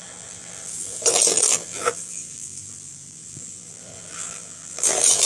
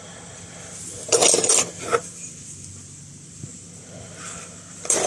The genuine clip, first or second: second